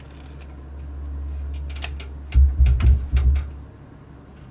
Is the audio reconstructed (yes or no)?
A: no